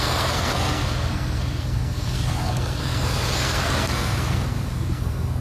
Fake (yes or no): yes